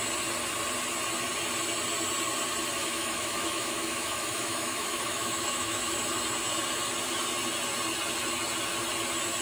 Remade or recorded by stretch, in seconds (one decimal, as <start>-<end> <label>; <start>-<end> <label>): 0.0-2.8 recorded; 2.8-6.0 remade; 6.0-9.4 recorded